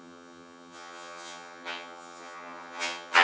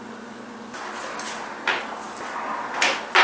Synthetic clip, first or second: first